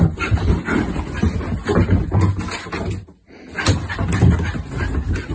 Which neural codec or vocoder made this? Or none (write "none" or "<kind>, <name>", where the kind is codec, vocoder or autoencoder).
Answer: none